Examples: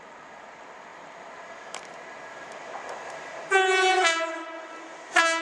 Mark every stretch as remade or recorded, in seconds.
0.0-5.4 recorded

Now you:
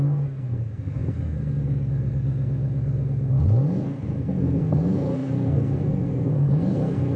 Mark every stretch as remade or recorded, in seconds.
0.0-7.2 remade